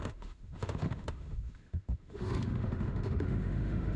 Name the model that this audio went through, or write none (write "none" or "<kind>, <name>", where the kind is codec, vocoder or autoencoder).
autoencoder, DAC-VAE